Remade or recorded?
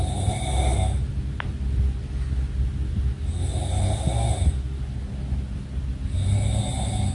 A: recorded